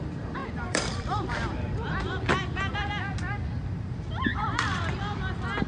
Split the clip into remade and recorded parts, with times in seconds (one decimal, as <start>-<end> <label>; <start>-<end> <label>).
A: 0.0-3.1 remade; 3.1-4.1 recorded; 4.1-5.7 remade